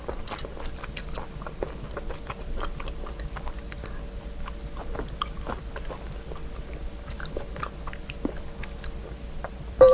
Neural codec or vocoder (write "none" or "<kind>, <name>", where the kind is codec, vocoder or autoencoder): none